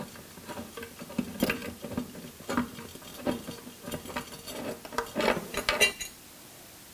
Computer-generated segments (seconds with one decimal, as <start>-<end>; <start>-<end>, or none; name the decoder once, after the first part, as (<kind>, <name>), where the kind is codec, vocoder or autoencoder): none